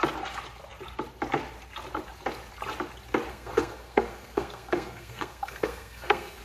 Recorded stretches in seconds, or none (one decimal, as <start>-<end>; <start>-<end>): 0.0-3.3